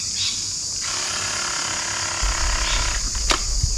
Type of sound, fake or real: real